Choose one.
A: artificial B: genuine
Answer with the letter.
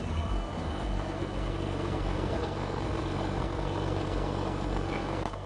A